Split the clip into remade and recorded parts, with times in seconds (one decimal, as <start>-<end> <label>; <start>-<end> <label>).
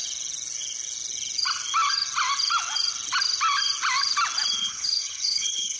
0.0-4.6 recorded; 4.6-5.8 remade